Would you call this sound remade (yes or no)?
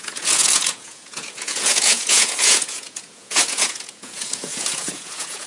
yes